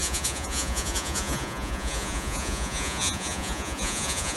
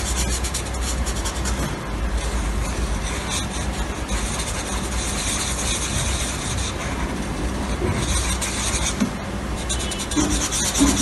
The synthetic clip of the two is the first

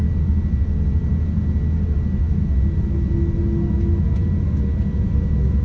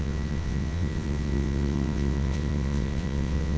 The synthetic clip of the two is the second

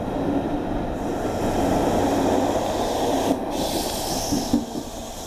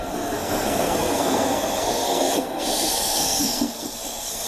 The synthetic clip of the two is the second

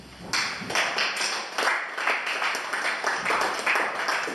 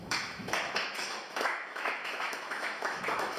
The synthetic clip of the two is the second